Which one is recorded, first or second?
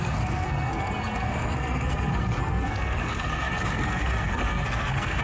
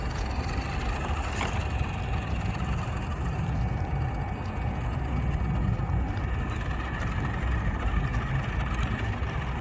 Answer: second